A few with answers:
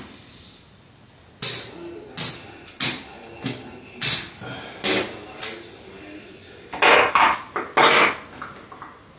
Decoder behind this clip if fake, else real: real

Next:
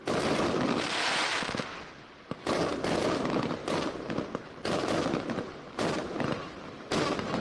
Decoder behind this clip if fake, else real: real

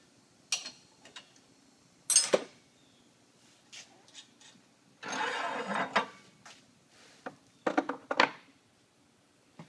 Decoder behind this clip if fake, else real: real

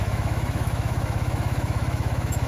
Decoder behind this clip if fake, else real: fake, autoencoder, DAC-VAE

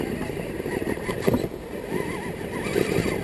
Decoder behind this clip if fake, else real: real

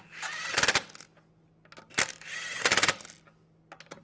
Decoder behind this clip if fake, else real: real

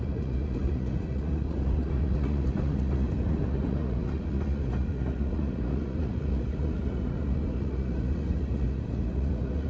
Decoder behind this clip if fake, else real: fake, vocoder, Vocos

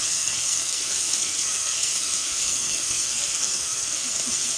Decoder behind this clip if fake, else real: fake, codec, SNAC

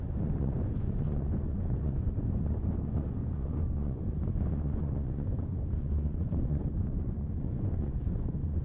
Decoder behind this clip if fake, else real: fake, vocoder, Vocos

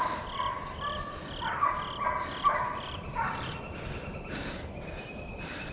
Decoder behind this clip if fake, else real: fake, vocoder, BigVGAN v2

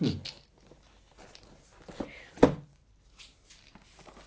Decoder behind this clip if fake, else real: real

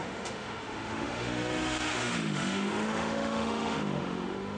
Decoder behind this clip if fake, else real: fake, autoencoder, DAC-VAE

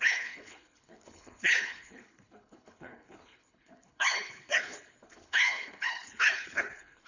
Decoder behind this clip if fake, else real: fake, codec, HILCodec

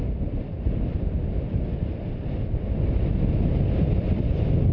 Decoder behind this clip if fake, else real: real